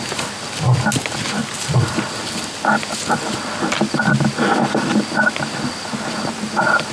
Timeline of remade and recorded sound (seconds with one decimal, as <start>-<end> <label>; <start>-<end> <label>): 0.0-6.9 recorded